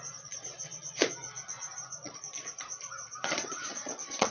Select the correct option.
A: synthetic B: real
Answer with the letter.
A